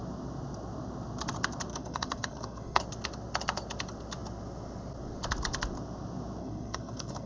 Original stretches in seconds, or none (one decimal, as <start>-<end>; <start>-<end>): 0.0-1.7; 2.8-6.4